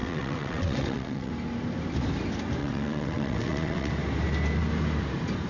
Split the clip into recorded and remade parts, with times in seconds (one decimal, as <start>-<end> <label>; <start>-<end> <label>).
0.0-1.3 remade; 1.3-2.6 recorded; 2.6-3.9 remade; 3.9-5.5 recorded